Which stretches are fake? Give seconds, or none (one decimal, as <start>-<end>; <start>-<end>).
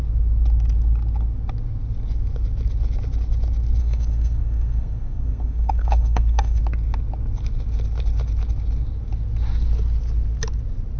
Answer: 3.8-6.6